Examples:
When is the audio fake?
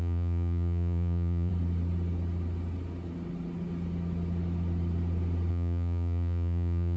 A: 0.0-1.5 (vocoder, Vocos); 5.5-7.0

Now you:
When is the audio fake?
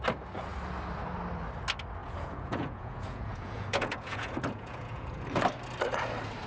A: 2.0-5.4 (vocoder, Vocos)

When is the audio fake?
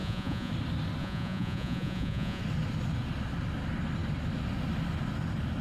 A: 0.0-0.5 (vocoder, Vocos); 1.0-2.4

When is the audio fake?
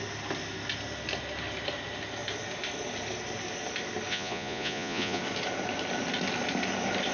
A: 4.1-5.2 (vocoder, Vocos)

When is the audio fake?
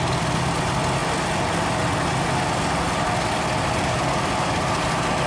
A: none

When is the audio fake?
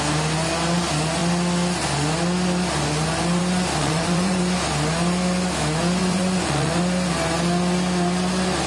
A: 3.8-4.4 (vocoder, Vocos); 6.0-6.7